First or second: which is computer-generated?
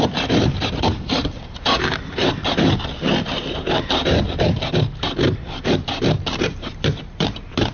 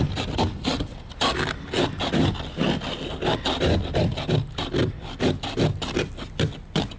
first